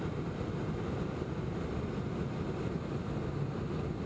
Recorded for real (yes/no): yes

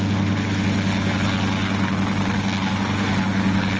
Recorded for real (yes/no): yes